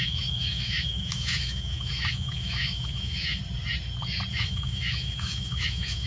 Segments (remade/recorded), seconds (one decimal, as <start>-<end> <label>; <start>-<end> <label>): 0.0-3.4 remade; 3.4-4.3 recorded; 4.3-6.1 remade